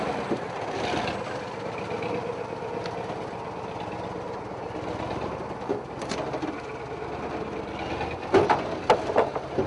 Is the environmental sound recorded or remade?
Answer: recorded